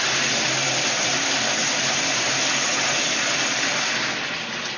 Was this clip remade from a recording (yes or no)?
no